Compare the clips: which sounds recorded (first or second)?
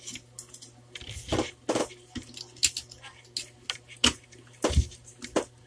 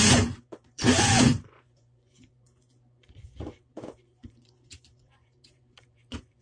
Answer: first